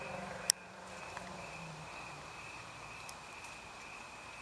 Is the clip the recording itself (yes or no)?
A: no